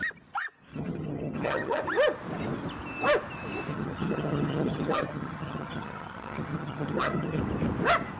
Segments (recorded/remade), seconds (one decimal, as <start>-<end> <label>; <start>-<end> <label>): 0.0-0.7 recorded; 0.7-1.8 remade; 1.8-3.7 recorded; 3.7-7.4 remade; 7.4-8.2 recorded